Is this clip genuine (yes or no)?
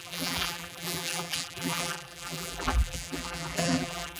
no